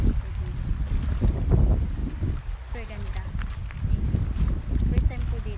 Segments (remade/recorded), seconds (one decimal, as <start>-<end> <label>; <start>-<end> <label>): 0.0-5.6 recorded